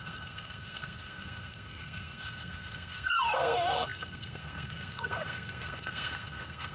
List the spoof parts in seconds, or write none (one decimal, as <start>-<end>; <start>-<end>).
0.0-6.7